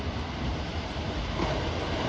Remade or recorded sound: recorded